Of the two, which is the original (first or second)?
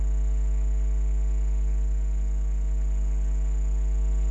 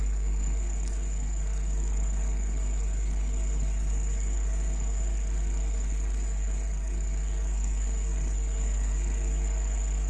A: first